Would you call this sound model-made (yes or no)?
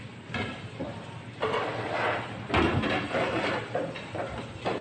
no